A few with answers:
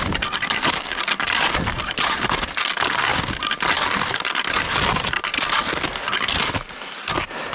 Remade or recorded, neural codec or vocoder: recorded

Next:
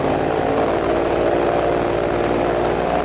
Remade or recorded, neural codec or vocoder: recorded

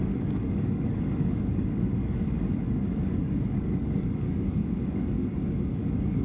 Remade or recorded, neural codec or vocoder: remade, codec, DAC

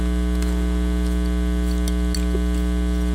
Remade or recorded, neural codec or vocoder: recorded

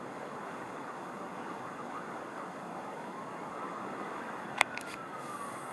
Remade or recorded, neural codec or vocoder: remade, codec, DAC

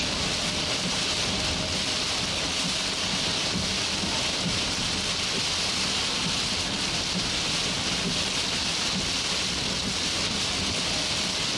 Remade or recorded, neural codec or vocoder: recorded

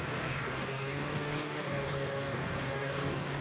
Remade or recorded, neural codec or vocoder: remade, codec, DAC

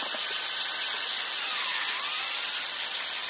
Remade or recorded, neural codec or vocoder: recorded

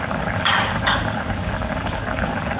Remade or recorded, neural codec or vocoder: remade, codec, DAC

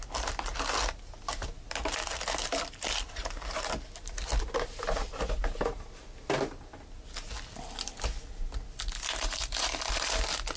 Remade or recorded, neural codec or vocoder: recorded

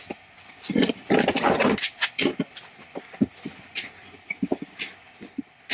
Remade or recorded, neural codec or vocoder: recorded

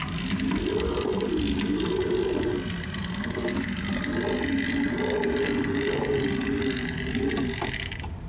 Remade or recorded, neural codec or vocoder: recorded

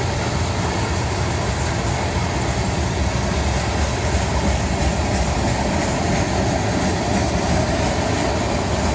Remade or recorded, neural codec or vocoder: recorded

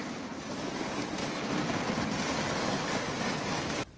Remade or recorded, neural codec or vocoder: recorded